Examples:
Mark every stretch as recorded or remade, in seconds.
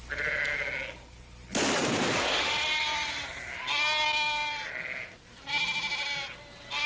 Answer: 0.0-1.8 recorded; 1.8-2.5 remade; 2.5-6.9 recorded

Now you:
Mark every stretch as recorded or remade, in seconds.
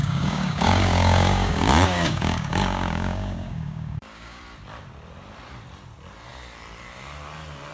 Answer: 0.0-4.4 remade; 4.4-7.7 recorded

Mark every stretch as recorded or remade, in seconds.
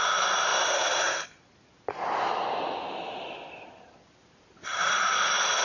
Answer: 0.0-5.6 recorded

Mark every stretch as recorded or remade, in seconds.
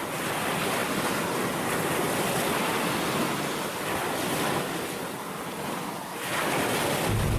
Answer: 0.0-7.4 recorded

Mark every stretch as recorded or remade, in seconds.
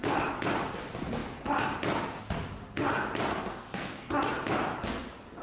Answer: 0.0-3.3 recorded; 3.3-4.1 remade; 4.1-5.4 recorded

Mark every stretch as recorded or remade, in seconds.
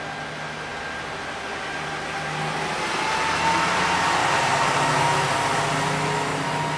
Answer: 0.0-4.2 recorded; 4.2-4.9 remade; 4.9-6.3 recorded; 6.3-6.8 remade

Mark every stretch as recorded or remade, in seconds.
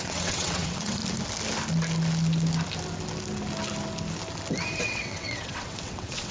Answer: 0.0-1.0 remade; 1.0-4.8 recorded; 4.8-6.3 remade